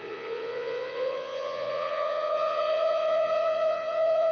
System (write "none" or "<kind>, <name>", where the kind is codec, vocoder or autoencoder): vocoder, Vocos